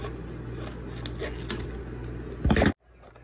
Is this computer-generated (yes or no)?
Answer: no